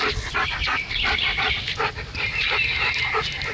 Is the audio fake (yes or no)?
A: no